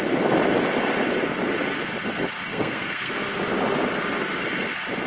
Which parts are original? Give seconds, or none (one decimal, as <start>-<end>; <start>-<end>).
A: 0.0-2.5; 3.1-5.1